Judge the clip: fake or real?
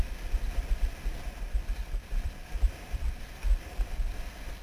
fake